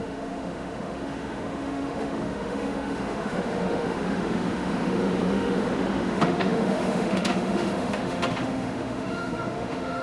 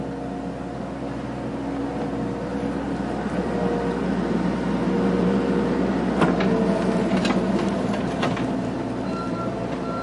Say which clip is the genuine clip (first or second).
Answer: second